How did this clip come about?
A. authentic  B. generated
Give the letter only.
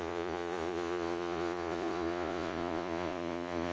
B